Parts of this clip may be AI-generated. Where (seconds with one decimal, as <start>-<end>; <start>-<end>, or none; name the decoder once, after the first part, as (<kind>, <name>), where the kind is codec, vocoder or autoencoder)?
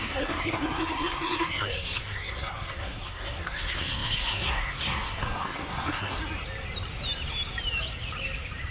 0.0-6.2 (codec, SNAC)